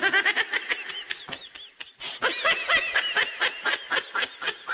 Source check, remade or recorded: recorded